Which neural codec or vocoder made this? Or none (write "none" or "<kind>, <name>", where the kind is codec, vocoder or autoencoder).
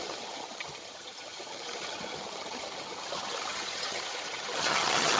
vocoder, HiFi-GAN